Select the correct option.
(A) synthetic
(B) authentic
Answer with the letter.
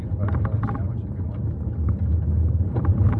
B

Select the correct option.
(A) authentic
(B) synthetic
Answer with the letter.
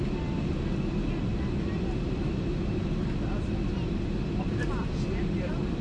A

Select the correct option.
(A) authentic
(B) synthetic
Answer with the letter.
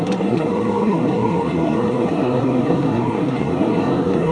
B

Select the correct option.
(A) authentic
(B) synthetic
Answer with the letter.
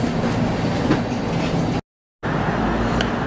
A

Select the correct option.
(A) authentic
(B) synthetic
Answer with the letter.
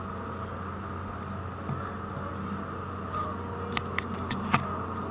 A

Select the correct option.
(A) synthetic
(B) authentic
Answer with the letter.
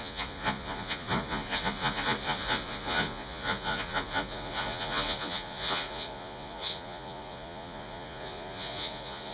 A